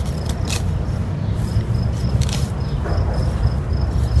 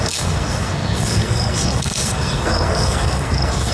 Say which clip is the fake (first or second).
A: second